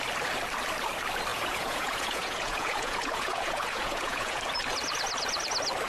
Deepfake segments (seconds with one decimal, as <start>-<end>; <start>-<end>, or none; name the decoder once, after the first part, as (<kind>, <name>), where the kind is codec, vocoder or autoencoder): 1.3-4.4 (vocoder, Vocos)